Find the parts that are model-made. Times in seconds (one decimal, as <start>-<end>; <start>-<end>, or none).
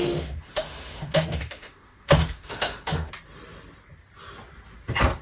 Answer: 0.0-3.1